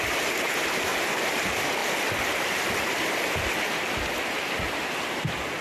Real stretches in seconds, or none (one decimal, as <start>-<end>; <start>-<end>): 0.0-5.6